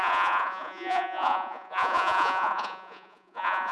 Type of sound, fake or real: fake